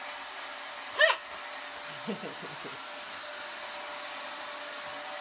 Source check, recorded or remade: recorded